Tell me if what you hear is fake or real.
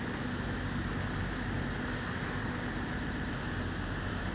real